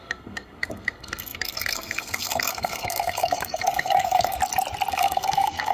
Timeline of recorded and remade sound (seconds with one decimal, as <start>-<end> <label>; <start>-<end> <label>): 0.0-4.4 remade; 4.4-4.9 recorded; 4.9-5.7 remade